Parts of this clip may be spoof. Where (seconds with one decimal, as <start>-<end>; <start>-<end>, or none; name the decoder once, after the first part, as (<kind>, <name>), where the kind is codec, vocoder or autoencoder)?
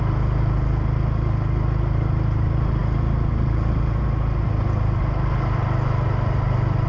none